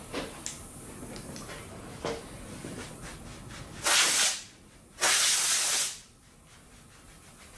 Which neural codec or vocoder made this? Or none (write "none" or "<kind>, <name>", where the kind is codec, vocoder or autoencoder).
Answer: none